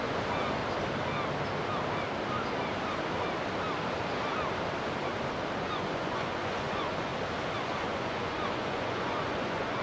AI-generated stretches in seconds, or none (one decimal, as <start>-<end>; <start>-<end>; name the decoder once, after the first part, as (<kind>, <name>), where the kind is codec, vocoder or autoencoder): 0.0-0.6 (vocoder, Vocos); 5.6-7.1; 7.7-9.8